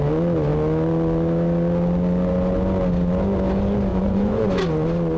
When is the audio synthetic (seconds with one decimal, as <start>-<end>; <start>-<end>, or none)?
3.9-4.5